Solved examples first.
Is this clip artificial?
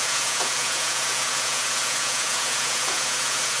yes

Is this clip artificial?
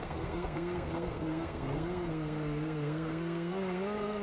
yes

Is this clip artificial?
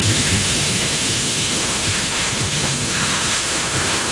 yes